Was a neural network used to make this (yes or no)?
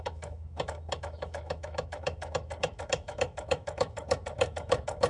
yes